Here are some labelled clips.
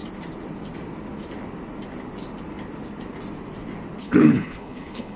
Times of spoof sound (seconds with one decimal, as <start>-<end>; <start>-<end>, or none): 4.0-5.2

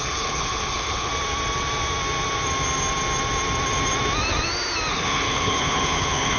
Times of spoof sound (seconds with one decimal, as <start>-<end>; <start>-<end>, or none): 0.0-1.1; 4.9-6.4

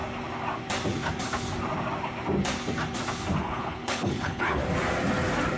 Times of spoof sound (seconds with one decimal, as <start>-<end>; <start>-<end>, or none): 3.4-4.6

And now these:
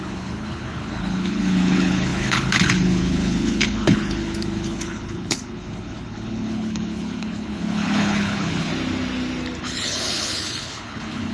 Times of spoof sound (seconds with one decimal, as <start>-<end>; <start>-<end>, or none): 0.0-8.7; 9.6-11.3

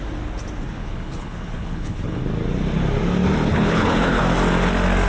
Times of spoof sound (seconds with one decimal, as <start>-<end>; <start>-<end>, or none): 0.8-2.2; 3.5-4.2